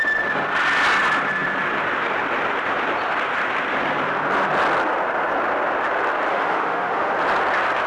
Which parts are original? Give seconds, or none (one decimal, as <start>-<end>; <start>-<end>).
0.0-6.3; 7.1-7.9